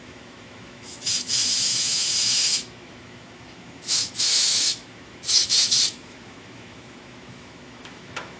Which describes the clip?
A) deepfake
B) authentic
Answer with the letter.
A